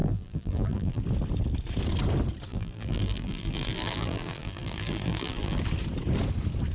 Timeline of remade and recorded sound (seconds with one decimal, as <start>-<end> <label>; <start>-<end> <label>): 0.0-1.0 remade; 1.0-2.5 recorded; 2.5-5.6 remade; 5.6-6.7 recorded